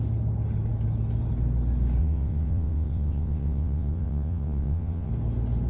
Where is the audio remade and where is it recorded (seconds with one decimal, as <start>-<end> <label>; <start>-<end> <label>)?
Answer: 0.0-2.0 recorded; 2.0-5.1 remade; 5.1-5.7 recorded